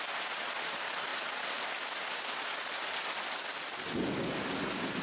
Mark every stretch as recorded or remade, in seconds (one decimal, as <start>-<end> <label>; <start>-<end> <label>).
0.0-5.0 recorded